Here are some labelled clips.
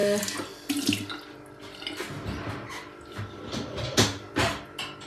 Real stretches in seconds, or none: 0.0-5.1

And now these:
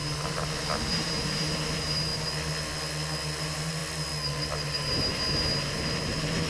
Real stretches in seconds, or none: 0.0-0.9; 2.1-3.4; 3.8-4.7

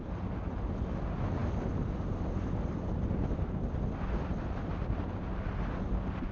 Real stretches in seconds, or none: 0.0-6.3

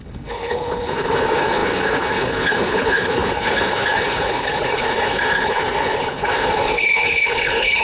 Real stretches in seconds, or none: none

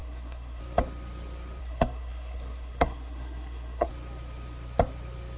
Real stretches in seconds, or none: 0.6-1.6; 3.9-5.4

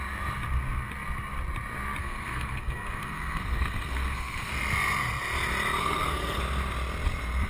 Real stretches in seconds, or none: 0.0-2.0; 4.5-5.8; 6.4-7.5

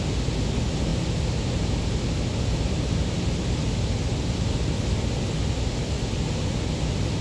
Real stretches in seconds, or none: 0.0-7.2